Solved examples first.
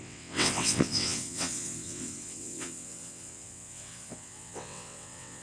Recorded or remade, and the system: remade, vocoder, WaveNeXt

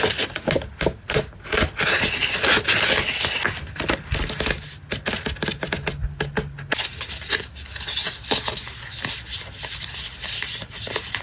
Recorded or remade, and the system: recorded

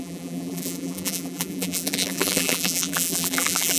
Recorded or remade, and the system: remade, vocoder, BigVGAN v2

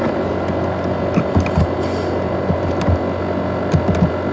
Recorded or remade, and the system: recorded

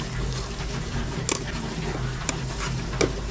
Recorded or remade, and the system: recorded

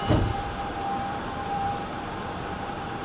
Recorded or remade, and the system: remade, vocoder, BigVGAN v2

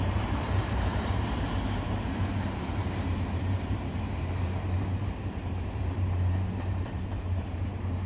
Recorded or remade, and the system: remade, vocoder, BigVGAN v2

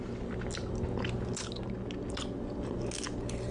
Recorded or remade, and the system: recorded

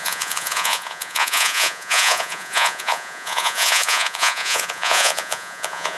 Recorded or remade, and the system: remade, vocoder, Vocos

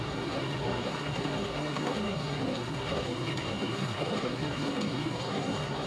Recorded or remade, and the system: remade, codec, SNAC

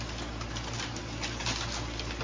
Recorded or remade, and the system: recorded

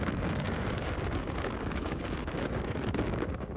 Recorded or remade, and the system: remade, codec, DAC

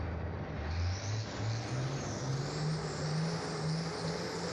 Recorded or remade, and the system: recorded